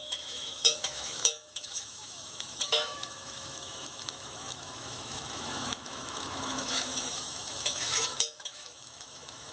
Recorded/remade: remade